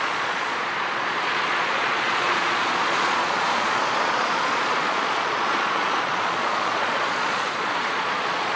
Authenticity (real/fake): fake